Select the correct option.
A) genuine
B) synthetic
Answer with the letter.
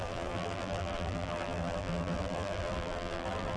B